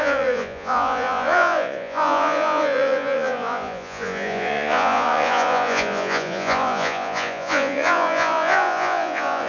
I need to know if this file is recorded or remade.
remade